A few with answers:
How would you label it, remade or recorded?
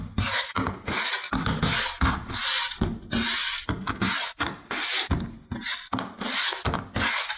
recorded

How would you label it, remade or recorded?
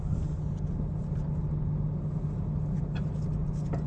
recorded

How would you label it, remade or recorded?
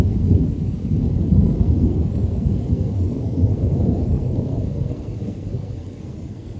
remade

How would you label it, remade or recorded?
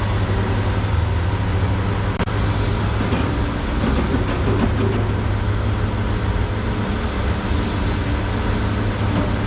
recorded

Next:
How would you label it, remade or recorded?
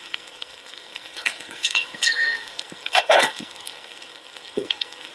remade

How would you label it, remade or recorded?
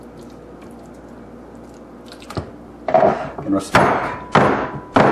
recorded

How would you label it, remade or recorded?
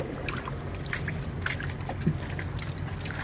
recorded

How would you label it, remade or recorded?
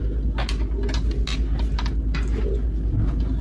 recorded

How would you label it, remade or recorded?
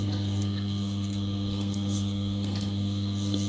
remade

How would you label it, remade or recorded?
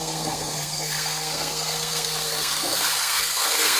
remade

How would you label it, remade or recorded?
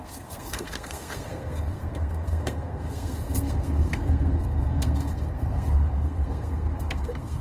remade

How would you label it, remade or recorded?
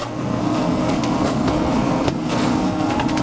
remade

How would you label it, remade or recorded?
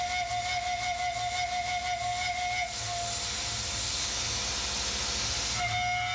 recorded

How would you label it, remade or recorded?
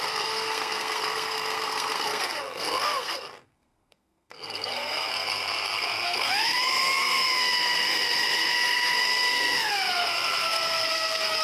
remade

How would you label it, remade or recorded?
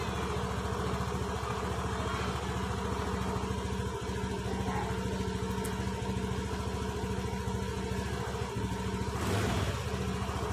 recorded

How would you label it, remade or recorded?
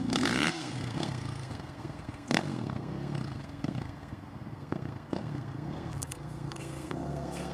remade